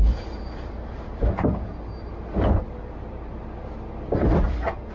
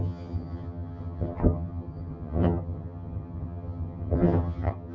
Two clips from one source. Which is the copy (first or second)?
second